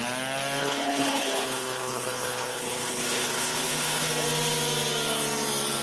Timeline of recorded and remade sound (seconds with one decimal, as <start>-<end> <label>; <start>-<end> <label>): 0.0-0.6 recorded; 0.6-4.1 remade; 4.1-5.8 recorded